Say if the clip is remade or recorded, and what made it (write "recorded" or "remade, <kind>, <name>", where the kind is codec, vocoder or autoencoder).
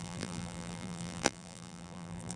remade, vocoder, BigVGAN v2